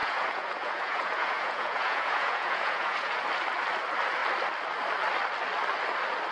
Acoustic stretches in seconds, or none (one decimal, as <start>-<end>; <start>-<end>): 3.2-6.3